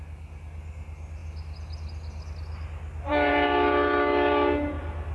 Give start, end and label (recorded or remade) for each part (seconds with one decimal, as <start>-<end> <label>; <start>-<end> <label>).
0.0-5.1 recorded